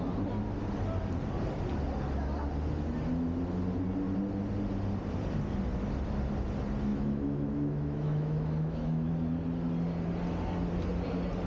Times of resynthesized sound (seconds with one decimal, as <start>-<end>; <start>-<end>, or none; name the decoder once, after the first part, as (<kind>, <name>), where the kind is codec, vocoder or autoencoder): 6.9-9.1 (autoencoder, DAC-VAE)